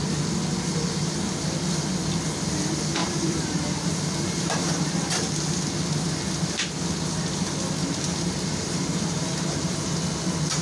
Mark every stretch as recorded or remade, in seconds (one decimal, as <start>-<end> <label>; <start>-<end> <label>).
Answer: 0.0-3.0 recorded; 3.0-5.2 remade; 5.2-7.8 recorded; 7.8-9.9 remade; 9.9-10.6 recorded